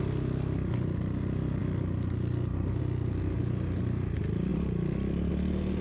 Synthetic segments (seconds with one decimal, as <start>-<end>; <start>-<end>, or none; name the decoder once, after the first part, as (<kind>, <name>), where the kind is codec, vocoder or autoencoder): none

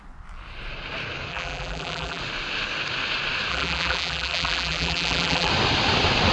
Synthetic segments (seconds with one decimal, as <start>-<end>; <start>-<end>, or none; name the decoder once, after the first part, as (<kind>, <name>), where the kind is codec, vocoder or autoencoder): 1.3-2.2 (vocoder, BigVGAN v2); 3.5-5.5

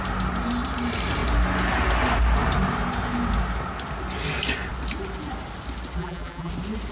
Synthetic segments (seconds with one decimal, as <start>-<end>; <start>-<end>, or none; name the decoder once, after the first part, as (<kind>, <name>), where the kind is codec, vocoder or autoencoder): 6.0-6.5 (vocoder, BigVGAN v2)

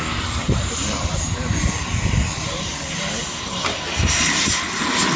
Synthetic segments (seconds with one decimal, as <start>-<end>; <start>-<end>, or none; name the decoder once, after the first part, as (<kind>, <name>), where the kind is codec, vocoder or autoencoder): 0.4-3.1 (vocoder, BigVGAN v2)

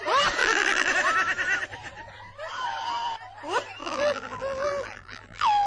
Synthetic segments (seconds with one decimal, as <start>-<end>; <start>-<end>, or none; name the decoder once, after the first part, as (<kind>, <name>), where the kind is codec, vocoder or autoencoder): 0.4-0.9 (vocoder, BigVGAN v2); 3.8-5.7

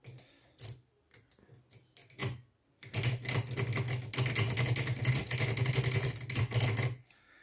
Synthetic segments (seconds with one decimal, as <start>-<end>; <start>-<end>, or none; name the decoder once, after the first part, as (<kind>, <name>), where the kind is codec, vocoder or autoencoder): none

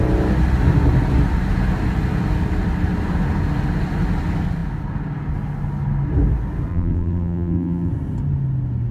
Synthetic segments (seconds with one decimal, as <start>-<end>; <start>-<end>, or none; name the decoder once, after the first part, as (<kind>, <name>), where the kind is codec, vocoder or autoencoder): 6.7-7.9 (vocoder, BigVGAN v2)

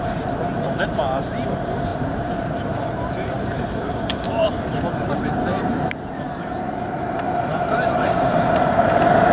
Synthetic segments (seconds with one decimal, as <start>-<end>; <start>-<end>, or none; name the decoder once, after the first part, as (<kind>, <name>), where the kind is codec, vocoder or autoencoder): 0.0-9.3 (vocoder, BigVGAN v2)